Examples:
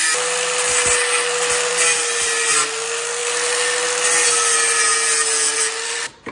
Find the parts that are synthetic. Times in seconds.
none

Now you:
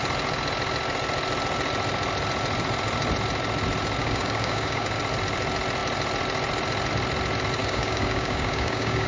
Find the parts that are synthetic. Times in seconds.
4.0-5.0; 7.6-9.1

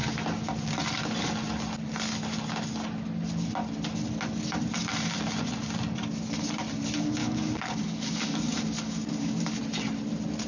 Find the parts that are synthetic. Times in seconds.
7.2-9.6

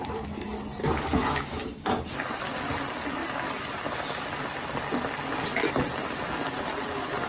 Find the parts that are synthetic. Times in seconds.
0.8-2.4

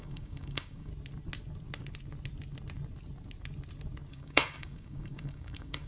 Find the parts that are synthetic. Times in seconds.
0.0-0.9; 4.1-5.9

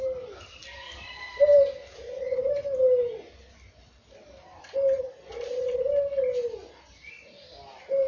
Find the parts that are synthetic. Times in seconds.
none

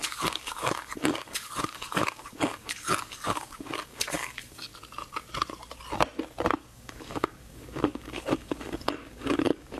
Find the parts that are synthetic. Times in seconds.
0.0-4.7; 6.6-9.8